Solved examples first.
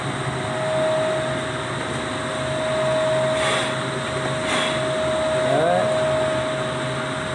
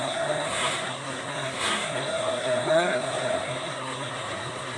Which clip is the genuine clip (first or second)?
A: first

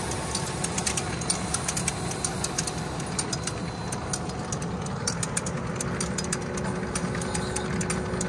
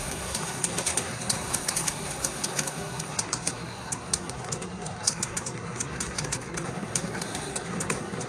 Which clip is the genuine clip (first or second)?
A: first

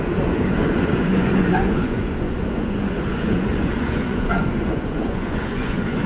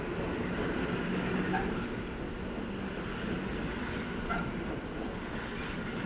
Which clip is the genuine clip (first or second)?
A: second